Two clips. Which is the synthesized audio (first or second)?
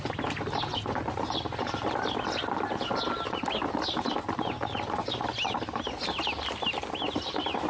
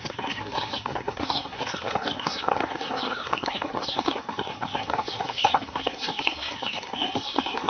second